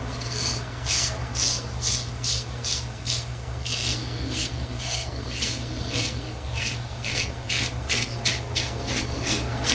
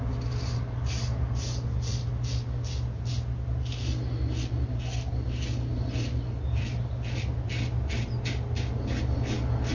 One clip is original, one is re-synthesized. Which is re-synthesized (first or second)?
first